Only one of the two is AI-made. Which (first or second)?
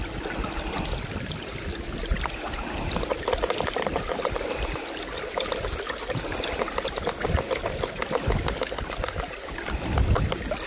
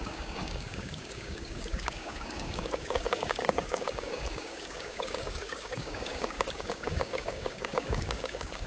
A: second